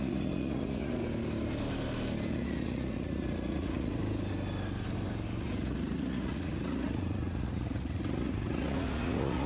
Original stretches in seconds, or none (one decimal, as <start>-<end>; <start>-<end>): 1.0-2.3; 4.0-5.4